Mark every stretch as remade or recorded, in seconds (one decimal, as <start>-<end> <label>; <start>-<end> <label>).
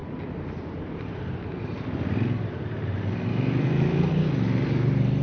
0.0-3.3 recorded; 3.3-4.0 remade; 4.0-5.2 recorded